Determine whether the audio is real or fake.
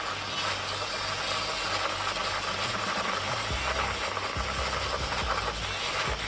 real